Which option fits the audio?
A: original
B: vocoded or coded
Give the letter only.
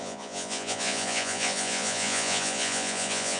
B